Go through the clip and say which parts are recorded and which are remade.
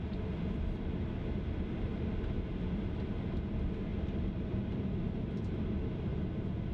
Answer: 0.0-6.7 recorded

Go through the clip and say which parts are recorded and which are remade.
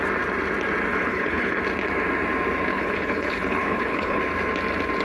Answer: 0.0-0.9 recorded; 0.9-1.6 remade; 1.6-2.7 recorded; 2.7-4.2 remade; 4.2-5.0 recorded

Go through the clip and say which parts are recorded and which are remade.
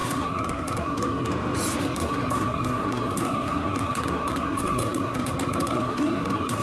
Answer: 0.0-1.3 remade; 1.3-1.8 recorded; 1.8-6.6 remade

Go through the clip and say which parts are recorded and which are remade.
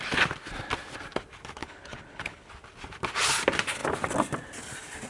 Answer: 0.0-1.6 recorded; 1.6-2.5 remade; 2.5-5.1 recorded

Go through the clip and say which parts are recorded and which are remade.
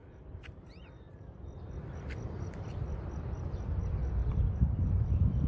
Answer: 0.0-4.2 remade; 4.2-4.9 recorded; 4.9-5.5 remade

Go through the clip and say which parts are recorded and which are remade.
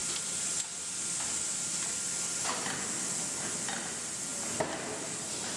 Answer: 0.0-5.6 recorded